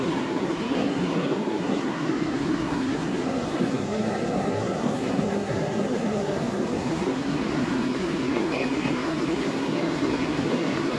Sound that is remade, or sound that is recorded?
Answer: remade